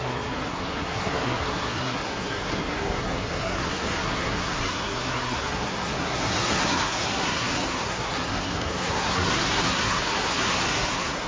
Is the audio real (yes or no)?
no